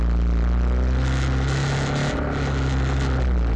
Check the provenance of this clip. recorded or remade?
recorded